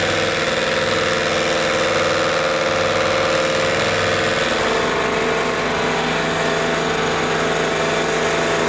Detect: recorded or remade recorded